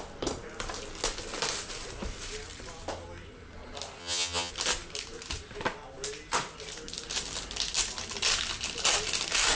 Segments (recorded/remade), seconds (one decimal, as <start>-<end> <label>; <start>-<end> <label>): 0.0-4.0 recorded; 4.0-4.5 remade; 4.5-9.5 recorded